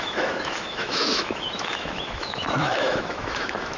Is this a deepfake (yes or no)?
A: yes